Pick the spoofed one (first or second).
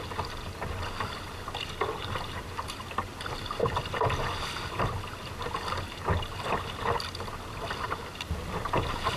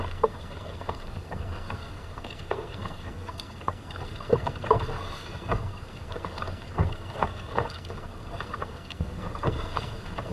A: second